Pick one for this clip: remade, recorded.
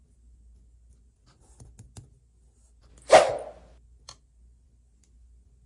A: recorded